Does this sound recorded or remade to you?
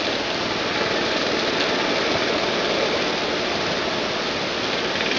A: recorded